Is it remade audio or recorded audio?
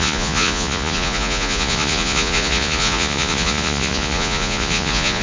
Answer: remade